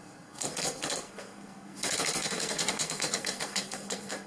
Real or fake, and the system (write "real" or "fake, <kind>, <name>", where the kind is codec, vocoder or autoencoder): fake, codec, SNAC